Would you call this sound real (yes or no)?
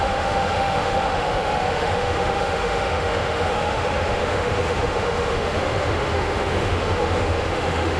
no